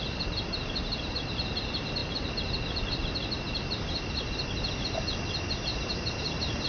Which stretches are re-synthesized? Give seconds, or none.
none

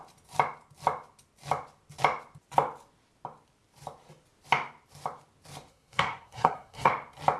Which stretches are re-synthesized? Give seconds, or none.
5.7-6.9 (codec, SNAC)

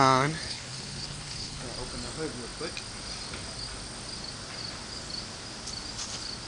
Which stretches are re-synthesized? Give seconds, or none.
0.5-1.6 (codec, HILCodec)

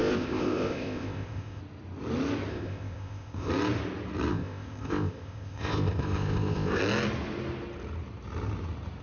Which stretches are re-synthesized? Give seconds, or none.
0.0-1.6 (codec, ZipCodec); 2.5-3.5; 4.3-6.8

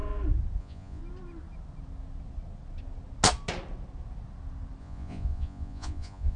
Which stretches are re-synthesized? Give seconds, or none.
0.6-1.0 (vocoder, Vocos); 4.8-6.4

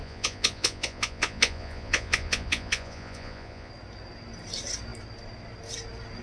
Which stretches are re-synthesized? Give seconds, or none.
0.0-3.7 (vocoder, Vocos)

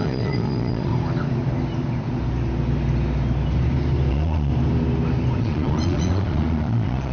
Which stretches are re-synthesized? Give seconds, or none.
0.0-0.9 (vocoder, Vocos); 4.1-4.5; 5.4-7.1